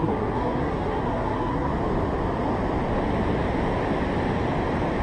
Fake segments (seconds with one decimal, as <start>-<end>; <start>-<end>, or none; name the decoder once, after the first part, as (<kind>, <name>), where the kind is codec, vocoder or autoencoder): 0.0-1.7 (codec, SNAC)